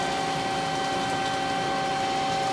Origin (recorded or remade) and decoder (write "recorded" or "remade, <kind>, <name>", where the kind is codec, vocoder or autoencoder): recorded